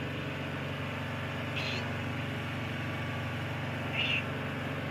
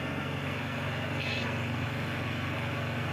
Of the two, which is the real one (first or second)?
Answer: first